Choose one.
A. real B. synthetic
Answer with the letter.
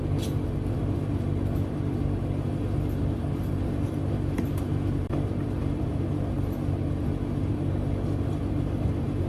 B